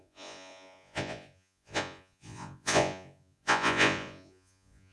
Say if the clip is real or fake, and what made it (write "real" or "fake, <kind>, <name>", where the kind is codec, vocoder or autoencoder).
fake, vocoder, Vocos